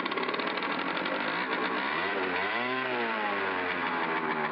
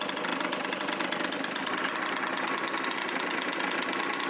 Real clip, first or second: second